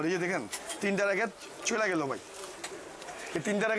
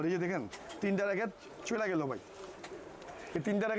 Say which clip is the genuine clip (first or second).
first